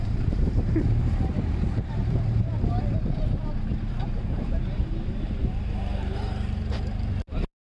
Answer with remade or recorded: remade